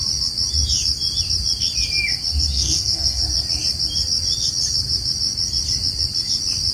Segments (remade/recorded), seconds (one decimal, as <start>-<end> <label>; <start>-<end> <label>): 0.0-2.5 recorded; 2.5-3.2 remade; 3.2-6.7 recorded